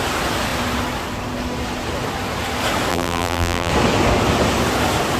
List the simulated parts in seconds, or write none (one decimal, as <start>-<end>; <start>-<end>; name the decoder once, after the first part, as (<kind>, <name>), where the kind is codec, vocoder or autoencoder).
2.9-3.7 (vocoder, BigVGAN v2)